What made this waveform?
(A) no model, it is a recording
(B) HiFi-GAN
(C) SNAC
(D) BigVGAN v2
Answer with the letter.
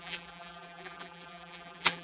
D